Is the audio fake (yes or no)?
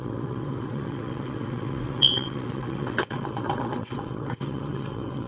yes